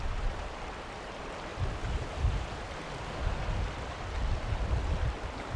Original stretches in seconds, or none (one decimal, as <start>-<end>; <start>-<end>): 0.0-5.6